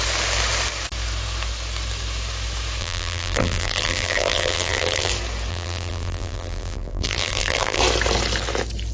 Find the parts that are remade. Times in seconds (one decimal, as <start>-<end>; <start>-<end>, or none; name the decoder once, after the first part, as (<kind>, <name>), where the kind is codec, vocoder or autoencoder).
2.8-5.1 (vocoder, BigVGAN v2); 5.5-7.8